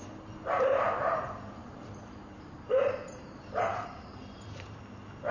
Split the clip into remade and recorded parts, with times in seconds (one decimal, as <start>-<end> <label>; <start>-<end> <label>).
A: 0.0-1.6 recorded; 1.6-4.8 remade; 4.8-5.3 recorded